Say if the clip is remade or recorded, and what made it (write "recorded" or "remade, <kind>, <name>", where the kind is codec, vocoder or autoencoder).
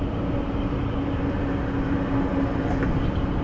recorded